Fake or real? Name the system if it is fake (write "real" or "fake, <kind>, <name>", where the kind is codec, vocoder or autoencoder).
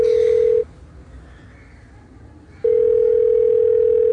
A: real